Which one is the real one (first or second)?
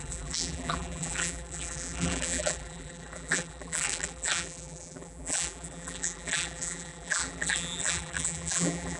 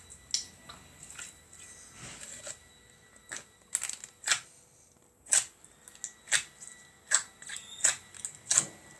second